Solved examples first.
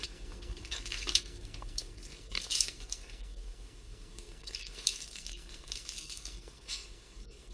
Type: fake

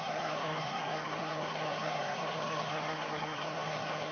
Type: fake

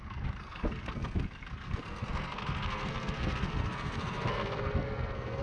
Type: fake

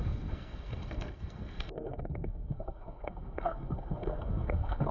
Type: fake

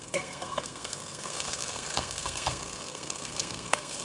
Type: fake